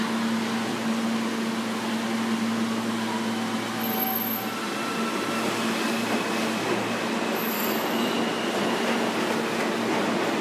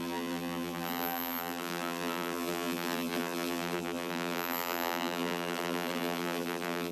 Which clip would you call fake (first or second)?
second